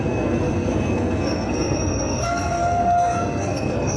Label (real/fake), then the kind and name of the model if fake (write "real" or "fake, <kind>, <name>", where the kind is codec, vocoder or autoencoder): fake, codec, SNAC